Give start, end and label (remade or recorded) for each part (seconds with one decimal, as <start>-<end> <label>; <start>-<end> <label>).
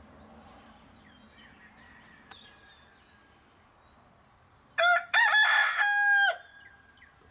0.0-7.3 recorded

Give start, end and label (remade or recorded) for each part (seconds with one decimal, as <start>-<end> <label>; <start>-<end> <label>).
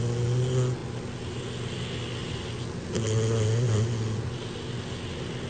0.0-5.5 recorded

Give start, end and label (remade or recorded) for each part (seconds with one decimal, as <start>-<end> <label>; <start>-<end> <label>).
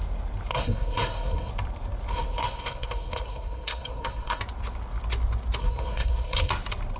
0.0-0.5 recorded; 0.5-1.5 remade; 1.5-2.1 recorded; 2.1-4.4 remade; 4.4-5.6 recorded; 5.6-6.5 remade; 6.5-7.0 recorded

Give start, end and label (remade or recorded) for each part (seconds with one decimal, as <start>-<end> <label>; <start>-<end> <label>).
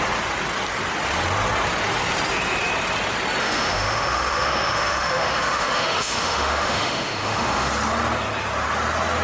0.0-3.4 recorded; 3.4-7.7 remade; 7.7-9.2 recorded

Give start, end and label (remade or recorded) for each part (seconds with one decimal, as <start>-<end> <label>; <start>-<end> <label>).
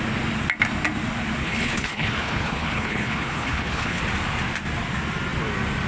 0.0-1.4 recorded; 1.4-4.0 remade; 4.0-5.9 recorded